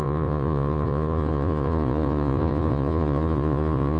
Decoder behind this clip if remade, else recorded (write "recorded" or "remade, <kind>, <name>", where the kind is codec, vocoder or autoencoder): remade, vocoder, Vocos